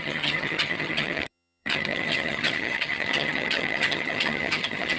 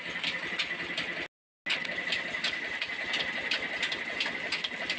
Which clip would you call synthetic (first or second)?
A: first